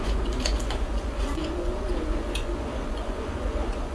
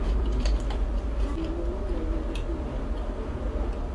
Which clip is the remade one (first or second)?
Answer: first